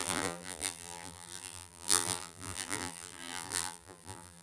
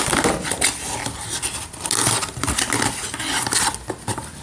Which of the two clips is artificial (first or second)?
first